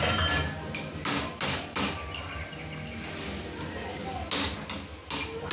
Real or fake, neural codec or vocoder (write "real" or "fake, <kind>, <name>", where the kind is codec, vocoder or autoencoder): real